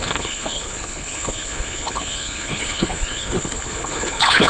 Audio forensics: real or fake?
fake